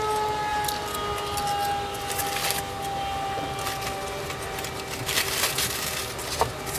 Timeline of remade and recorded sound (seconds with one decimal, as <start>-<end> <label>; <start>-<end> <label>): 0.0-6.8 recorded